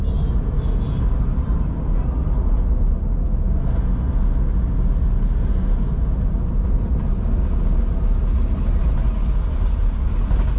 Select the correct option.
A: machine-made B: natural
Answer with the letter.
B